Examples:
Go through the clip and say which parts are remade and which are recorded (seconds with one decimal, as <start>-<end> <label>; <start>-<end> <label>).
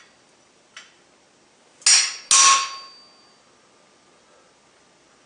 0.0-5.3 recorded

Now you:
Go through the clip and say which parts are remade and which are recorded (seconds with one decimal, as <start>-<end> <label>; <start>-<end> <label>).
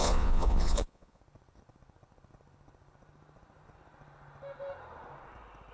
0.0-1.2 remade; 1.2-5.7 recorded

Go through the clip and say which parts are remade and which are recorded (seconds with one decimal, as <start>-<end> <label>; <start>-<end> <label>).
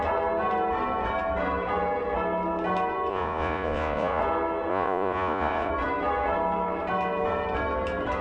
0.0-3.1 recorded; 3.1-4.2 remade; 4.2-4.7 recorded; 4.7-5.7 remade; 5.7-8.2 recorded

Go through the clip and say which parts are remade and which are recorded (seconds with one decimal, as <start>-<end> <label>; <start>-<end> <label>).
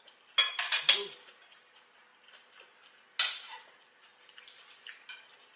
0.0-5.6 recorded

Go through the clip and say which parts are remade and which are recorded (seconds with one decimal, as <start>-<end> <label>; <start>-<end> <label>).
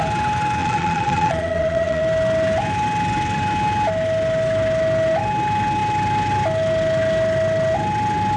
0.0-0.6 recorded; 0.6-2.0 remade; 2.0-8.4 recorded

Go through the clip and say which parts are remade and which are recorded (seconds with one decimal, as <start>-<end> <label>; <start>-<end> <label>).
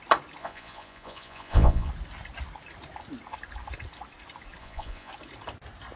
0.0-0.4 recorded; 0.4-1.9 remade; 1.9-4.6 recorded; 4.6-5.1 remade; 5.1-6.0 recorded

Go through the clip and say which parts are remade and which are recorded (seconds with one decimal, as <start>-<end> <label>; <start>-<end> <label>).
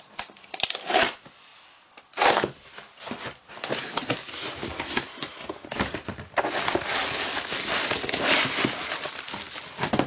0.0-10.1 recorded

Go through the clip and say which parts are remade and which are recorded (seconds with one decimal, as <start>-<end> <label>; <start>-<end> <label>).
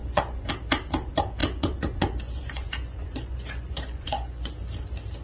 0.0-0.5 remade; 0.5-1.4 recorded; 1.4-4.5 remade; 4.5-5.2 recorded